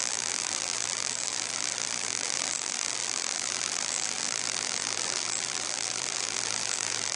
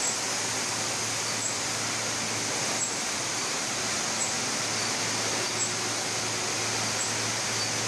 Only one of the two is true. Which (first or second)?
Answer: second